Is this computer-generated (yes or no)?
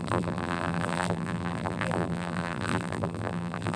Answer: yes